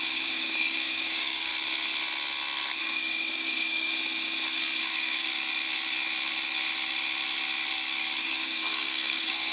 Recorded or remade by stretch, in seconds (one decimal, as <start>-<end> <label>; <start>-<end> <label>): 0.0-1.5 remade; 1.5-2.8 recorded; 2.8-3.9 remade; 3.9-4.8 recorded; 4.8-5.3 remade; 5.3-8.2 recorded; 8.2-9.5 remade